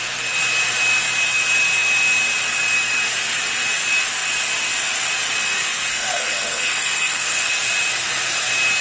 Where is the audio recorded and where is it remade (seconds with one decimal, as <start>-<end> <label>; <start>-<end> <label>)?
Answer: 0.0-5.9 recorded; 5.9-7.5 remade; 7.5-8.8 recorded